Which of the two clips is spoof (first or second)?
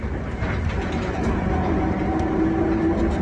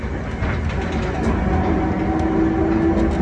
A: first